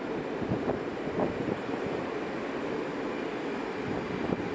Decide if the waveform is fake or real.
real